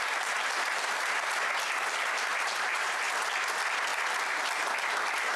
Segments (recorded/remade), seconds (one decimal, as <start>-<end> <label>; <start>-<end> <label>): 0.0-2.3 recorded; 2.3-3.1 remade; 3.1-5.4 recorded